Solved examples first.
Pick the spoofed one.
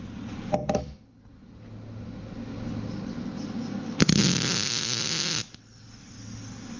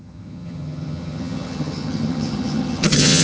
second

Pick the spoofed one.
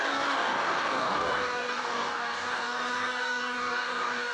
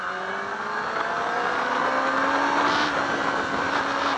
first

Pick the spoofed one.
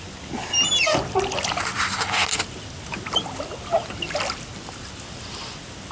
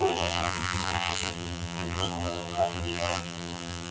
second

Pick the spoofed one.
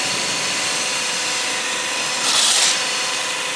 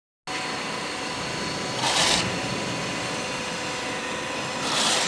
first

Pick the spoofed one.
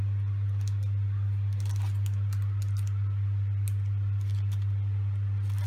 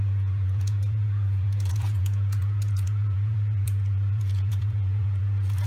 second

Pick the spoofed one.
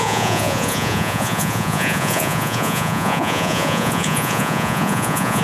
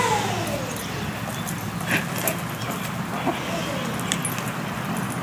first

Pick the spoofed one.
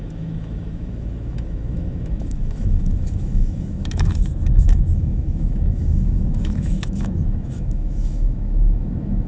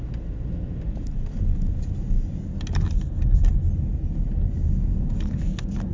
first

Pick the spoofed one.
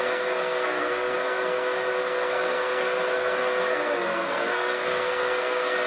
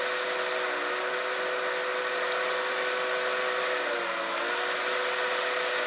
first